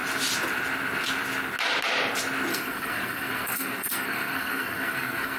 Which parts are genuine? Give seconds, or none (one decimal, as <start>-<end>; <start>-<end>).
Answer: 0.0-2.5